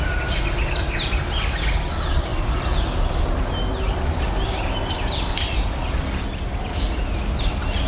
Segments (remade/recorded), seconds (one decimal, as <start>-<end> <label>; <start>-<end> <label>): 0.0-7.9 recorded